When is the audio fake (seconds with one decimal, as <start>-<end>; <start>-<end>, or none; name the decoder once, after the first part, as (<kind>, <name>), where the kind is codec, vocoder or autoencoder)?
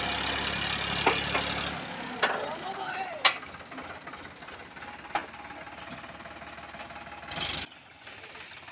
none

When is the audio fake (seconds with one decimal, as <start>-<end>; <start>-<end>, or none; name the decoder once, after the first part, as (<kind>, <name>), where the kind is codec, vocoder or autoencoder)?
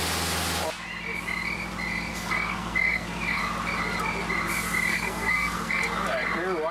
2.1-3.4 (codec, SNAC); 4.9-5.8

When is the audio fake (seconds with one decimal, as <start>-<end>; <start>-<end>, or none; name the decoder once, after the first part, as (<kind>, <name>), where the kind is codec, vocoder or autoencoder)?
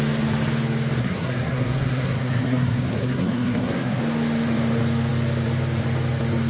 1.0-4.0 (codec, SNAC)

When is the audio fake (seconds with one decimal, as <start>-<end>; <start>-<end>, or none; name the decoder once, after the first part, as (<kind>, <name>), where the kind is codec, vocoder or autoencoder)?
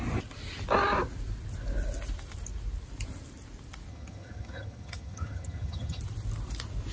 3.9-6.0 (vocoder, HiFi-GAN)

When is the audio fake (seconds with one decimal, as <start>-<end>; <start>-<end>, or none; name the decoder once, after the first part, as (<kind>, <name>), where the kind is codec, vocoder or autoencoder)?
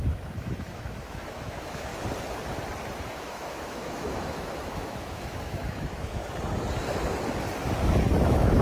0.0-1.9 (autoencoder, DAC-VAE); 3.1-6.2; 8.2-8.6